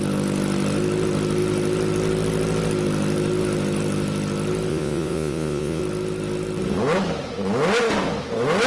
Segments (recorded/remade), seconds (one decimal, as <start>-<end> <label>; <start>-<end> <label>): 0.0-4.7 recorded; 4.7-5.8 remade; 5.8-8.7 recorded